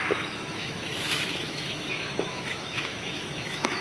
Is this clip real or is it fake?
fake